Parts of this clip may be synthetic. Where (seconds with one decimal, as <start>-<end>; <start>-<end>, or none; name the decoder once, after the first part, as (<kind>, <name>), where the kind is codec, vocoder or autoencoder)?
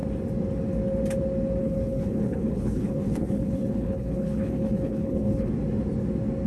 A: 1.6-5.5 (codec, HILCodec)